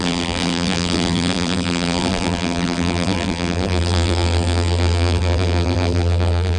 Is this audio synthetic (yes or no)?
yes